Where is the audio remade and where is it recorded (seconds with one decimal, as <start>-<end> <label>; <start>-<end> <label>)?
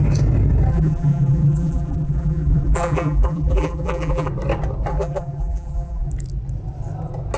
0.0-0.7 recorded; 0.7-4.3 remade; 4.3-4.9 recorded; 4.9-6.1 remade; 6.1-7.4 recorded